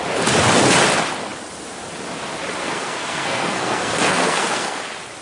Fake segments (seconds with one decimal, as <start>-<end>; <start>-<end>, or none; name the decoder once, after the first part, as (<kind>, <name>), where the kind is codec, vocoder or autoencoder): 2.6-4.8 (codec, SNAC)